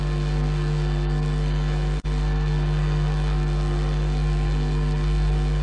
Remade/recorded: remade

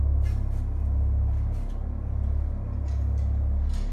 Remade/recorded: recorded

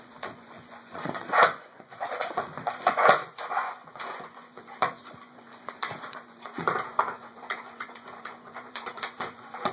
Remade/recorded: remade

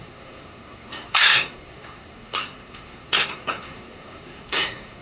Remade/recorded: remade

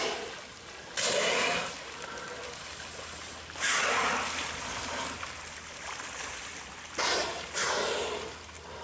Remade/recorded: recorded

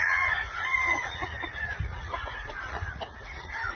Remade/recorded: remade